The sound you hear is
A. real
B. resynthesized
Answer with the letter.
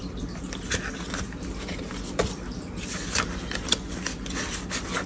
A